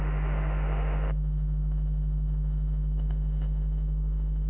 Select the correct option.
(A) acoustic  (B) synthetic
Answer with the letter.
B